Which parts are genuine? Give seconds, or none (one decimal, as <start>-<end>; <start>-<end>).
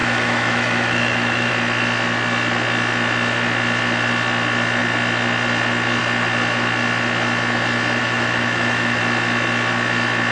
1.5-8.0; 9.0-10.3